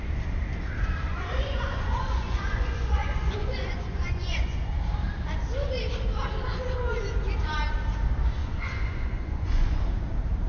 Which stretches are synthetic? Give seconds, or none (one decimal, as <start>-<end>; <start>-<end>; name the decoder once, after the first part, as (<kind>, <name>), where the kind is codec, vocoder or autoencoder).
1.1-4.7 (vocoder, Vocos); 8.4-9.8